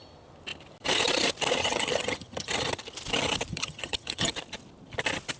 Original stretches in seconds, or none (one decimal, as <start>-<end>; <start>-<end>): 0.0-1.6; 2.5-3.5; 4.3-5.4